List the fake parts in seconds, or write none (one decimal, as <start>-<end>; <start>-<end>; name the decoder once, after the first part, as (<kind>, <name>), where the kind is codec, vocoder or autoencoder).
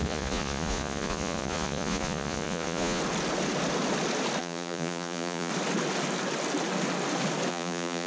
0.0-3.0 (vocoder, Vocos); 4.4-5.5; 7.5-8.1